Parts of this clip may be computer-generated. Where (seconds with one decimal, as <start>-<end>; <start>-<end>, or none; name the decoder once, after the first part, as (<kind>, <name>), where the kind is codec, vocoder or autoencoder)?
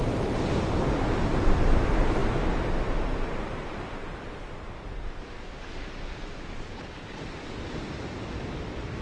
none